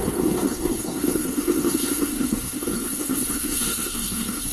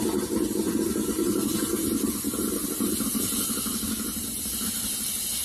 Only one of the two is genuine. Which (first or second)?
second